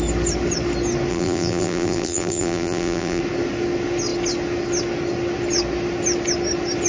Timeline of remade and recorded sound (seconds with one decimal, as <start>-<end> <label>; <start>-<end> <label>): 0.0-1.1 recorded; 1.1-3.2 remade; 3.2-6.9 recorded